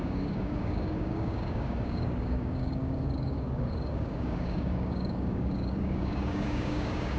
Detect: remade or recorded remade